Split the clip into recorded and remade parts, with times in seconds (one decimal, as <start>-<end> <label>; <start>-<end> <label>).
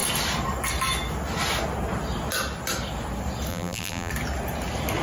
0.0-3.5 recorded; 3.5-4.1 remade; 4.1-5.0 recorded